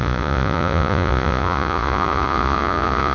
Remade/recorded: remade